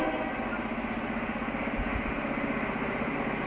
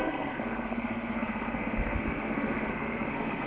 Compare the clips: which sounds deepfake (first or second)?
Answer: second